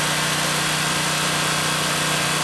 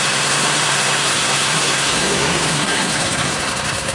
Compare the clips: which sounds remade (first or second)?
second